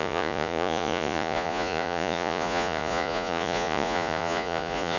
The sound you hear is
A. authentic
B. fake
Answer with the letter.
B